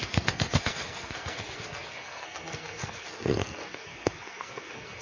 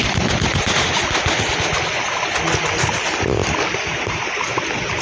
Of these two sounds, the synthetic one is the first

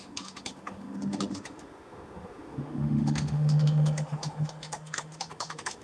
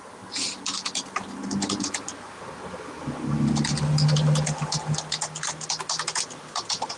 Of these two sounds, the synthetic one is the first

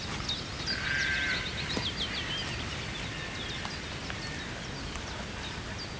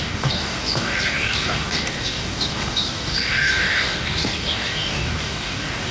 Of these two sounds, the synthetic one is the second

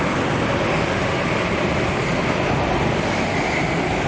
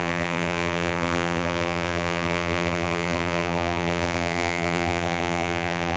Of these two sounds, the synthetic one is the second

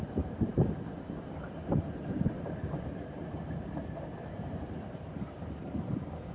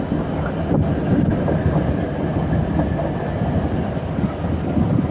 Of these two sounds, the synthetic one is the first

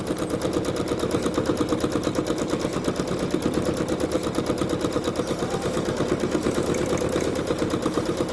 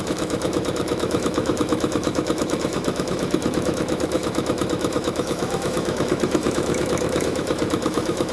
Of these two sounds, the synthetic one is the second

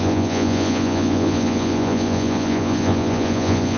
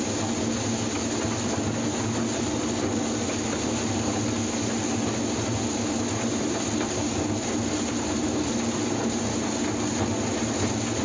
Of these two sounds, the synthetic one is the first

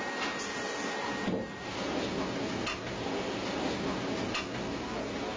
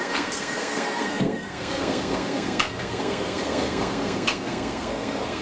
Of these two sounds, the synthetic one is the second